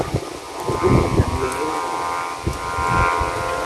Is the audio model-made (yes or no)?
no